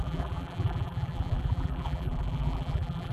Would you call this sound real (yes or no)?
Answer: no